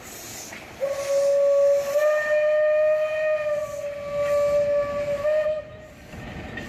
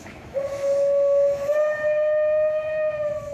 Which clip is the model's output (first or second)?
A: second